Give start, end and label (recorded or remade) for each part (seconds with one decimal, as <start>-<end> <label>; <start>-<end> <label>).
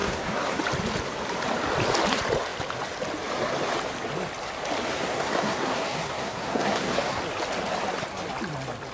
0.0-0.6 remade; 0.6-4.9 recorded; 4.9-7.2 remade; 7.2-8.9 recorded